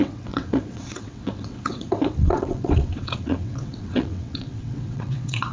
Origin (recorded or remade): remade